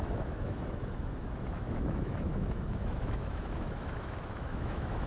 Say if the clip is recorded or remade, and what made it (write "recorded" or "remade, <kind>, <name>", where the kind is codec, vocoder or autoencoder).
remade, autoencoder, DAC-VAE